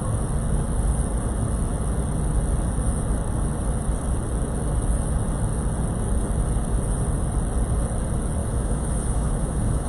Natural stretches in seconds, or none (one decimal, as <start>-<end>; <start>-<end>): 0.0-8.4

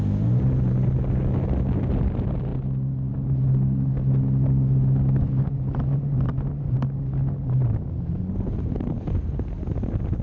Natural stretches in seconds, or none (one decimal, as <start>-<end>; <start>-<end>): 0.0-10.2

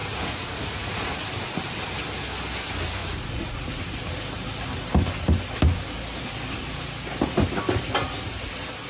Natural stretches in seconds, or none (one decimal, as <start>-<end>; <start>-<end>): 1.2-3.0; 3.8-8.9

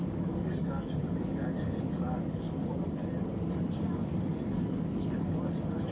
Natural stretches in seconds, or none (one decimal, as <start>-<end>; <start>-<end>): none

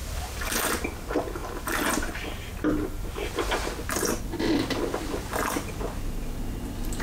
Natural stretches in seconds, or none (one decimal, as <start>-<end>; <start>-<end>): 0.6-7.0

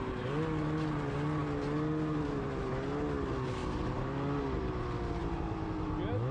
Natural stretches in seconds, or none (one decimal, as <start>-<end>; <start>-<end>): 0.0-6.3

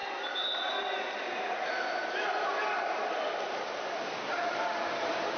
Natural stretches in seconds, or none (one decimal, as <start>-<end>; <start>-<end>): 0.0-5.4